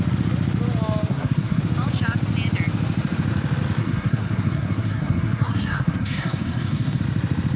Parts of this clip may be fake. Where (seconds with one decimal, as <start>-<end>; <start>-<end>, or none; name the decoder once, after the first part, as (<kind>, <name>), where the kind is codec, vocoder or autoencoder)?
1.1-1.6 (codec, SNAC); 3.8-7.0